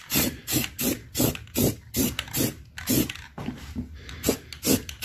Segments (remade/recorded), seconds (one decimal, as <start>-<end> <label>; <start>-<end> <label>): 0.0-5.0 recorded